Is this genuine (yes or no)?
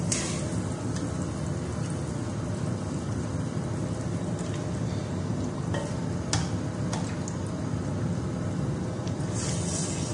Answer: yes